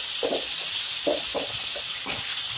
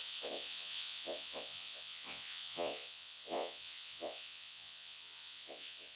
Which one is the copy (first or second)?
second